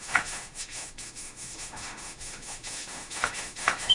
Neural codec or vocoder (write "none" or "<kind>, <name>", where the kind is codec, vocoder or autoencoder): autoencoder, DAC-VAE